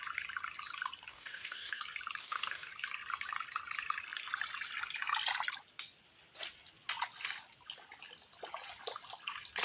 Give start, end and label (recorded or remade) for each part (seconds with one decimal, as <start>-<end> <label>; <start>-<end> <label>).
0.0-1.1 recorded; 1.1-1.8 remade; 1.8-2.2 recorded; 2.2-2.7 remade; 2.7-9.6 recorded